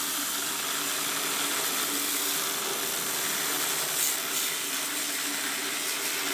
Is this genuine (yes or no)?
yes